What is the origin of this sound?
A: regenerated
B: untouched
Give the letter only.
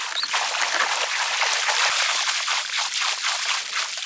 B